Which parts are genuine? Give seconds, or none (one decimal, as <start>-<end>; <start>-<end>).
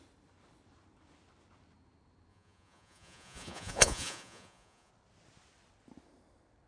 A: 0.0-2.3; 4.9-6.7